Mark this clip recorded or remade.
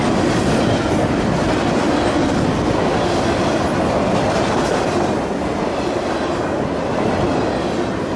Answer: recorded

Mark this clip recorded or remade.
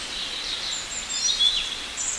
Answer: recorded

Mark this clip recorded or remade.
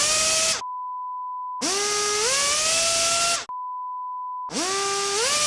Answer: recorded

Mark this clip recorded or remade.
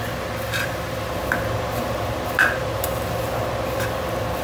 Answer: recorded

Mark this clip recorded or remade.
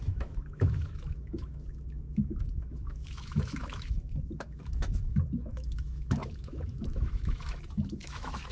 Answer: remade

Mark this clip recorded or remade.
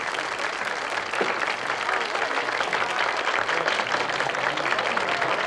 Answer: recorded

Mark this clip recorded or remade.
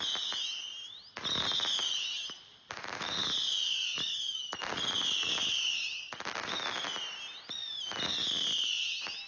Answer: recorded